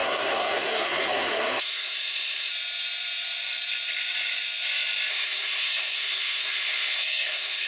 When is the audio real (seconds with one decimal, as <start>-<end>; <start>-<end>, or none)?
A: 2.5-5.1